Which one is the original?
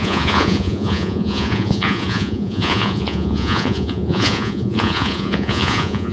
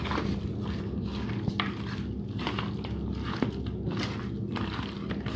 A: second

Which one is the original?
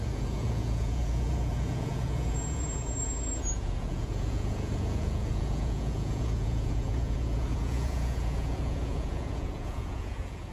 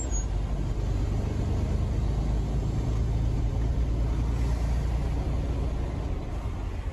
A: second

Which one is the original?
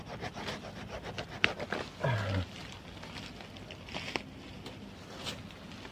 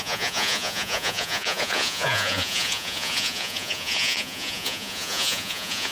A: first